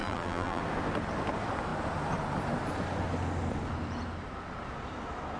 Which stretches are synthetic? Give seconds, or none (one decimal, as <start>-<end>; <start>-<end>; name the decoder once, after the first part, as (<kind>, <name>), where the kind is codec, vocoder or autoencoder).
0.0-0.6 (vocoder, BigVGAN v2)